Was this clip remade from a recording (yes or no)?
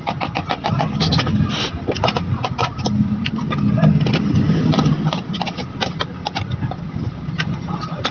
no